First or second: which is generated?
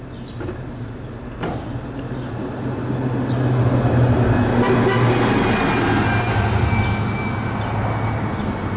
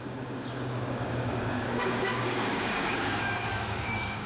second